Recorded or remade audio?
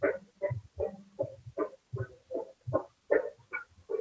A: recorded